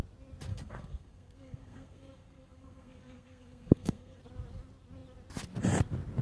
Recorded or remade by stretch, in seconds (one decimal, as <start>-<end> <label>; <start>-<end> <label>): 0.0-0.5 recorded; 0.5-4.2 remade; 4.2-6.2 recorded